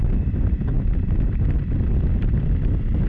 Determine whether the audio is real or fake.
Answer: real